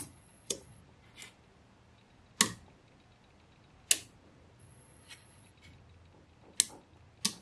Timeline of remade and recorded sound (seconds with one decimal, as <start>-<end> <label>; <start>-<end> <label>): 0.0-0.8 remade; 0.8-4.6 recorded; 4.6-5.5 remade; 5.5-7.4 recorded